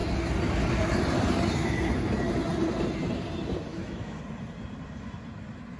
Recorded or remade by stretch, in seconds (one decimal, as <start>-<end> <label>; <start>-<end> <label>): 0.0-3.7 recorded; 3.7-4.2 remade; 4.2-5.8 recorded